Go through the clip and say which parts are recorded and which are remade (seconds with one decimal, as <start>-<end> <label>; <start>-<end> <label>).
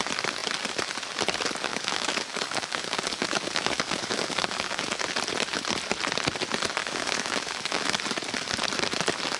0.0-1.7 recorded; 1.7-5.0 remade; 5.0-6.8 recorded; 6.8-8.0 remade; 8.0-9.4 recorded